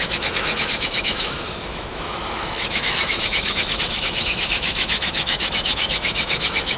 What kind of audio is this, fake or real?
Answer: fake